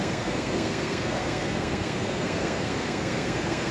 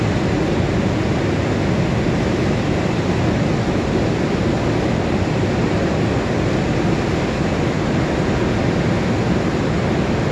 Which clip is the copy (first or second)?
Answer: first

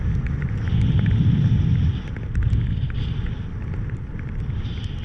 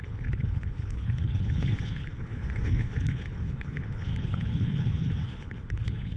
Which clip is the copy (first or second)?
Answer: second